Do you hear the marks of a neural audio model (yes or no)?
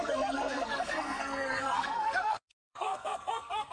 yes